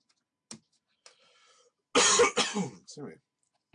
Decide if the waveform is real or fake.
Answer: real